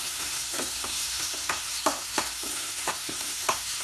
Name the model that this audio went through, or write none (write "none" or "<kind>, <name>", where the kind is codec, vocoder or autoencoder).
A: codec, SNAC